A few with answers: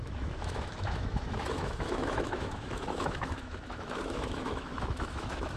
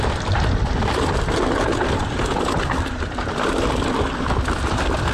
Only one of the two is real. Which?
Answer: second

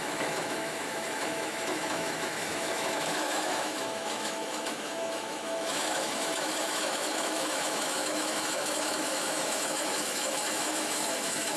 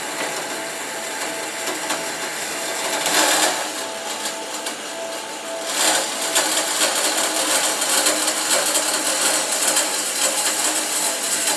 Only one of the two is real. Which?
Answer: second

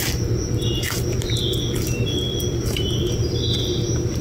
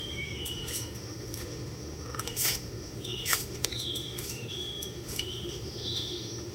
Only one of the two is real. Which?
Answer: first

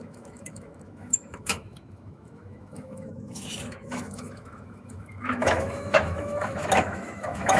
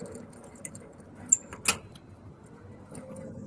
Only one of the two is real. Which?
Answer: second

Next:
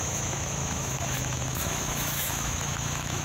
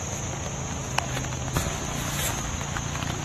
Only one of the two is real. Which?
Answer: second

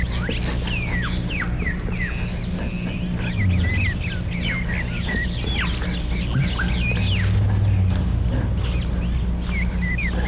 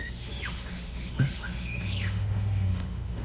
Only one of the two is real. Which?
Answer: first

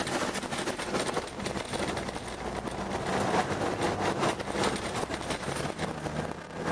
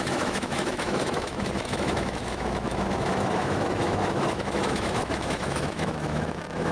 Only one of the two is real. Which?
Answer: first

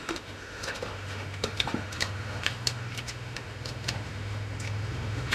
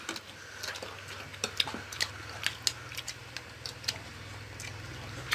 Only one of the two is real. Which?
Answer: second